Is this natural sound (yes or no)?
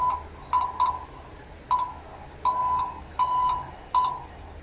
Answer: yes